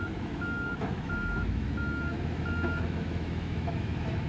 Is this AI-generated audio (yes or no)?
yes